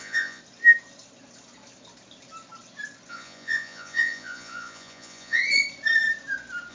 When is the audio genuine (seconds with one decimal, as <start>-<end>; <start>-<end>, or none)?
0.4-3.1; 5.4-6.7